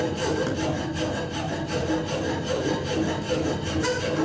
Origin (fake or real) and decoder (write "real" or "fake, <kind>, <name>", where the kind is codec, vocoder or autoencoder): real